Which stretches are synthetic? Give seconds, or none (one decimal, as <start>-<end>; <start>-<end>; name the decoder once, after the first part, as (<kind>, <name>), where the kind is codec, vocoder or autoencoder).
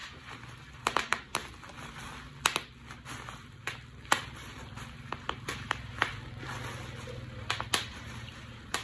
0.0-1.4 (vocoder, BigVGAN v2); 4.9-6.1; 7.9-8.8